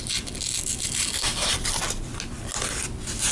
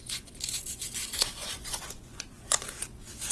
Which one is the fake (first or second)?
second